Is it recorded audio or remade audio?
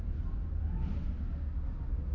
recorded